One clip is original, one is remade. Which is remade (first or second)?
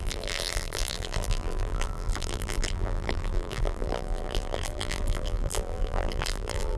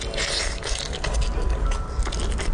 first